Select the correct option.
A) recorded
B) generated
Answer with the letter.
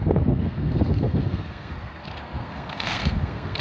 B